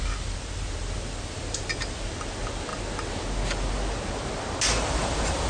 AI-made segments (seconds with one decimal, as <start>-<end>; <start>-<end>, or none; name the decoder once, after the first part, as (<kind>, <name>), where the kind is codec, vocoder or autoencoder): none

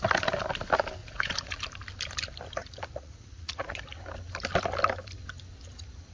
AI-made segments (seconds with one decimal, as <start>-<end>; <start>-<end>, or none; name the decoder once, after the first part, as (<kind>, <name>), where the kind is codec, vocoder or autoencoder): 1.0-1.6 (vocoder, Vocos); 2.6-3.8

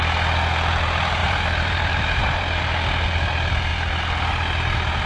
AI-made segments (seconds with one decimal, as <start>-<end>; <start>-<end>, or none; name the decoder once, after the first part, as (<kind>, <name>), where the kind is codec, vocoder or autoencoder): 1.2-2.6 (vocoder, BigVGAN v2)

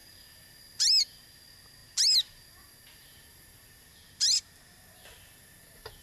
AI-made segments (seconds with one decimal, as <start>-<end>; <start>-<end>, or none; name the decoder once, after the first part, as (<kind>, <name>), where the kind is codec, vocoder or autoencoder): none

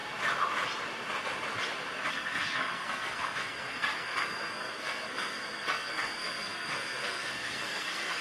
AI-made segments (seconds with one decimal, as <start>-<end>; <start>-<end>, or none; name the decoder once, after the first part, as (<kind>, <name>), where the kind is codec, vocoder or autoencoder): 2.1-8.2 (codec, SNAC)

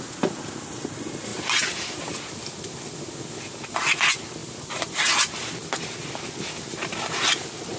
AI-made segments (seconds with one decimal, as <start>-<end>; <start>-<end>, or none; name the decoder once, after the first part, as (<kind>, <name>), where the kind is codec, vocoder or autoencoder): 1.3-2.0 (vocoder, BigVGAN v2); 4.4-5.3